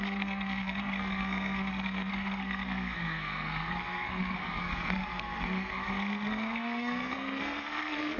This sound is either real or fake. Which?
fake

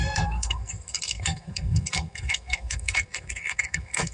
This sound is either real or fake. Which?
fake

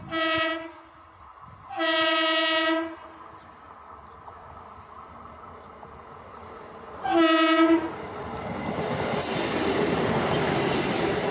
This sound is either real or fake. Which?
real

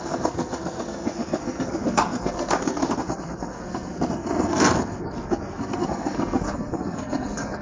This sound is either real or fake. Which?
fake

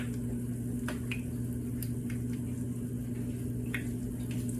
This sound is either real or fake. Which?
real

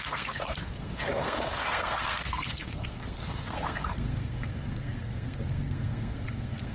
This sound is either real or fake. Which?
fake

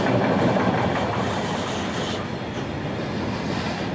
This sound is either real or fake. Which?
real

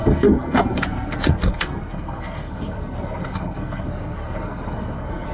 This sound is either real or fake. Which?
fake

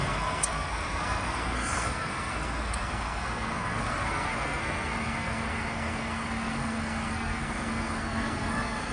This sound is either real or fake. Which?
fake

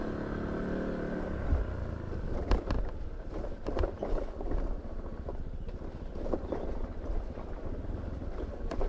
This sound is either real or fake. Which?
real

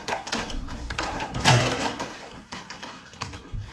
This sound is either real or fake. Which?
fake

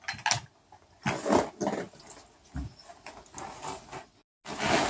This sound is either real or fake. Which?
real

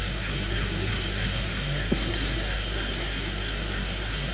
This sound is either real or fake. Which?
fake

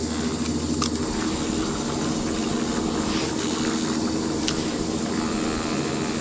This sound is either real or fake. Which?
real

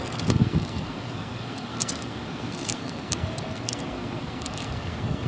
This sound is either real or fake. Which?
fake